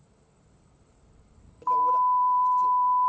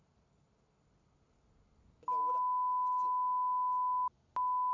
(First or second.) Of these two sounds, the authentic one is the second